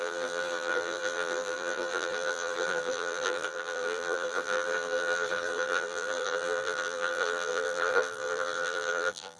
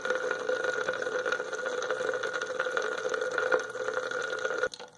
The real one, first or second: second